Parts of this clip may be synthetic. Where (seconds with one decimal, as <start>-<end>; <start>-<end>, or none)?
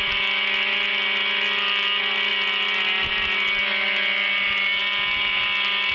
none